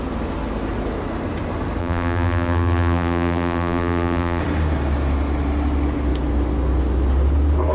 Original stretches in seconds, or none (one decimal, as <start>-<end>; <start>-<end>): 0.0-1.8; 4.4-7.7